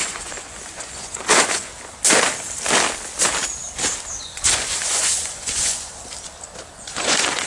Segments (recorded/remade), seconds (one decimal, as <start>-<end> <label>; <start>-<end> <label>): 0.0-1.7 remade; 1.7-4.2 recorded; 4.2-5.9 remade; 5.9-6.7 recorded; 6.7-7.5 remade